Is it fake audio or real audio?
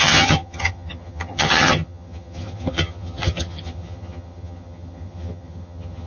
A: fake